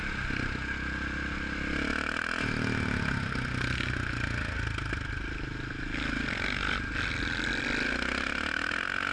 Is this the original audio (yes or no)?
yes